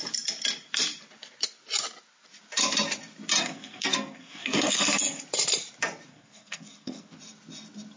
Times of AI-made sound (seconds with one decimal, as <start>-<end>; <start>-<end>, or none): 3.4-5.2; 6.1-7.2